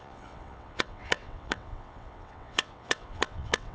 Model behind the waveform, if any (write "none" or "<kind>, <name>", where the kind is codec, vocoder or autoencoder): vocoder, WaveNeXt